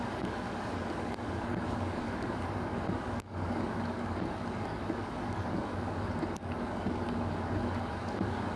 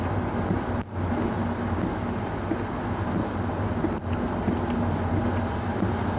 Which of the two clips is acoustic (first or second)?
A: second